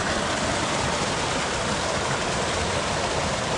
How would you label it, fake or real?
real